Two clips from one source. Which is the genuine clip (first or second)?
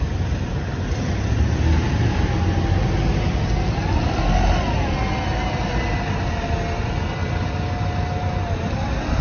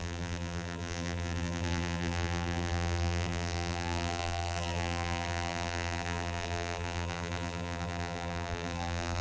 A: first